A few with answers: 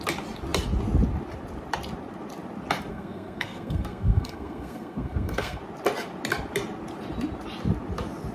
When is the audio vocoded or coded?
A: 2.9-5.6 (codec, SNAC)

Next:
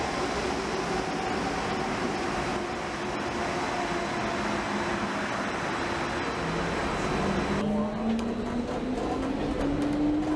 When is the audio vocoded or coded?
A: none

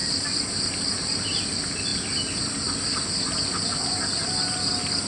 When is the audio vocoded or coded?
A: none

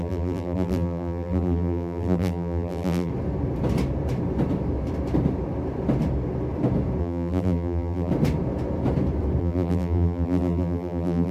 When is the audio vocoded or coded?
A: 0.0-3.1 (vocoder, BigVGAN v2); 7.0-8.1; 9.4-11.3

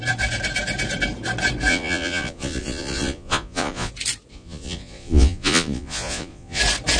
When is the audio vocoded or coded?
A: 1.7-3.9 (vocoder, Vocos); 4.3-6.6

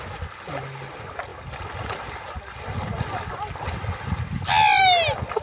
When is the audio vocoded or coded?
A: none

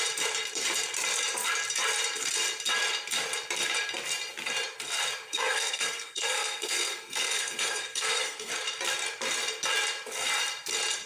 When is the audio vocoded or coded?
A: 5.3-8.5 (codec, SNAC)